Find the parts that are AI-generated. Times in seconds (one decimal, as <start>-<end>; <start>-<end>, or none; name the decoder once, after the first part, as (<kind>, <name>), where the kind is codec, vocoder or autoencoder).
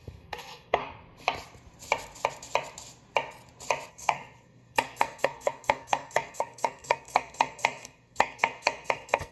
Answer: 0.0-0.8 (codec, SNAC); 3.9-9.3